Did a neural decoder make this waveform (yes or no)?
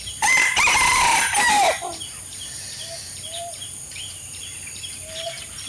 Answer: yes